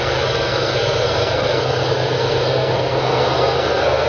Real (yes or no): no